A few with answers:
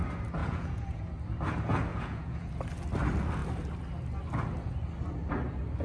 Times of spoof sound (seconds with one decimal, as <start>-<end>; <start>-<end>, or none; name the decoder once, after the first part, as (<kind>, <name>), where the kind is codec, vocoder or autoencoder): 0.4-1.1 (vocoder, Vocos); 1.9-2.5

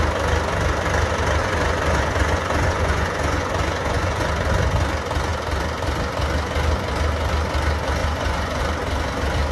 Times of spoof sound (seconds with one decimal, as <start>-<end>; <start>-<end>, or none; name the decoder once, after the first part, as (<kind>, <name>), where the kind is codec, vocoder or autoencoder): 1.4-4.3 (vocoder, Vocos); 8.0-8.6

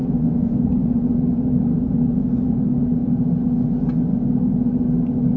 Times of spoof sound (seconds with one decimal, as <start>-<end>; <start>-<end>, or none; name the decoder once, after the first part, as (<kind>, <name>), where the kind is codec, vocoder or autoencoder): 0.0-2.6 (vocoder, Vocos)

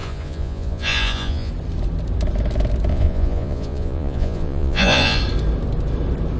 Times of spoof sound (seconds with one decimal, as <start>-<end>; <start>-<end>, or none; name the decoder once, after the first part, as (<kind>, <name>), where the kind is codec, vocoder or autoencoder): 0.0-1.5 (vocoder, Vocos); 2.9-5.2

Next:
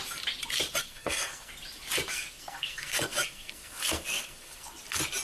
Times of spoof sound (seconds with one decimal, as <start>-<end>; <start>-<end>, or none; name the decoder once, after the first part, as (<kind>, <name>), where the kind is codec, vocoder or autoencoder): 0.8-1.5 (codec, SNAC); 2.1-4.7

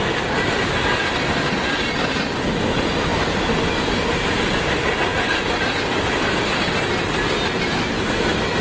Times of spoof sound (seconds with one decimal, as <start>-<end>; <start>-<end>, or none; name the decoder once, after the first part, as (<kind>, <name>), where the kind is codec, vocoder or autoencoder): none